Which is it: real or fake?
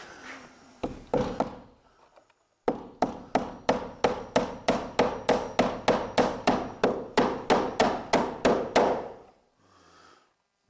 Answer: real